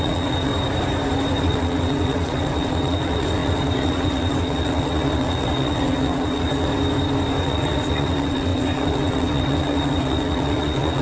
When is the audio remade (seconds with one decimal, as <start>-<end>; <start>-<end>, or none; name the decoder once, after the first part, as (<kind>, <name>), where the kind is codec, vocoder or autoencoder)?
0.0-0.5 (vocoder, WaveNeXt); 1.4-6.7; 7.4-11.0